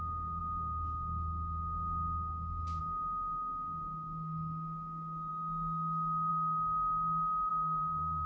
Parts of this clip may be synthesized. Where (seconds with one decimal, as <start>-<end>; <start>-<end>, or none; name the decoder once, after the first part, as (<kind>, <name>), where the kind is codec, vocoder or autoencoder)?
7.5-8.3 (codec, SNAC)